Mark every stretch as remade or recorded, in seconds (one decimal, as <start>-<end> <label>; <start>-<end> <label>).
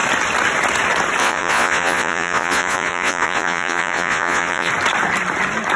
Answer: 0.0-1.2 recorded; 1.2-4.7 remade; 4.7-5.8 recorded